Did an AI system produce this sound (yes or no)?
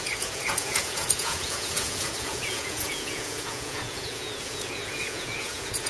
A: yes